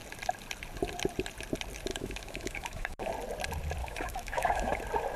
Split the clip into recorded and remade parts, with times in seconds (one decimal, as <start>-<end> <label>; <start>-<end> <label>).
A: 0.0-1.9 recorded; 1.9-3.1 remade; 3.1-3.8 recorded; 3.8-4.8 remade; 4.8-5.2 recorded